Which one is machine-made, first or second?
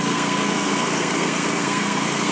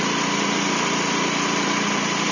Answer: first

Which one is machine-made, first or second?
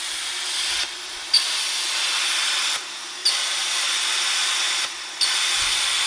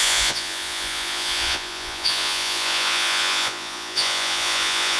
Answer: second